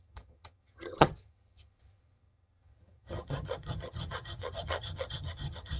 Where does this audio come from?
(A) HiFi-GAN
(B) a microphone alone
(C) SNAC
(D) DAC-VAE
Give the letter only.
A